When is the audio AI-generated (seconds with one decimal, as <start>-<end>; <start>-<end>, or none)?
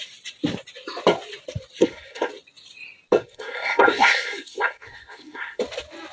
1.8-2.3; 3.2-5.6